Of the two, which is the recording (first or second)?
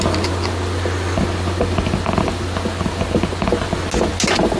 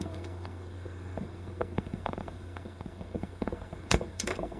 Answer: first